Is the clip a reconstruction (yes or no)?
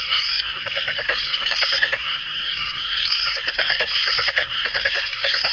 yes